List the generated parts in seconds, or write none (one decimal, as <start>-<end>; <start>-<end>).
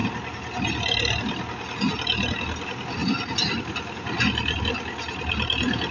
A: none